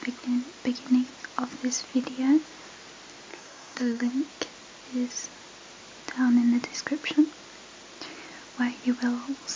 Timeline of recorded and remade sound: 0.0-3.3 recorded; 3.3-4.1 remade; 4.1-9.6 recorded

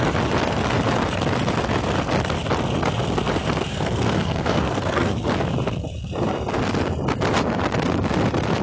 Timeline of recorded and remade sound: 0.0-3.7 recorded; 3.7-5.3 remade; 5.3-8.6 recorded

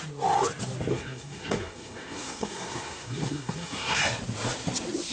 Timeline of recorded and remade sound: 0.0-0.9 recorded; 0.9-4.0 remade; 4.0-5.1 recorded

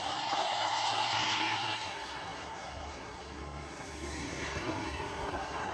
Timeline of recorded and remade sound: 0.0-5.7 remade

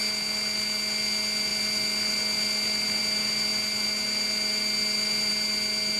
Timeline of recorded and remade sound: 0.0-6.0 recorded